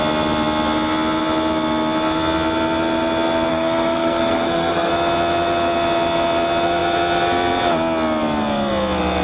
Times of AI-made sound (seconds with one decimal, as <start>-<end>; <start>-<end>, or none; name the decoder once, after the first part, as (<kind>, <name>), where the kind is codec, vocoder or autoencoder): 3.5-4.9 (codec, SNAC)